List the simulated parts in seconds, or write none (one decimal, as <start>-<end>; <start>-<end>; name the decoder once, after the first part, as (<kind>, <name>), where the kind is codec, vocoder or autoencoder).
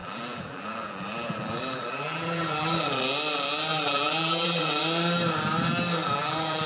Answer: 0.0-3.0 (vocoder, BigVGAN v2); 3.7-4.8; 6.0-6.7